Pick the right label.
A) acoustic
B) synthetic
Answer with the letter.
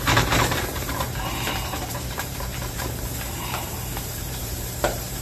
B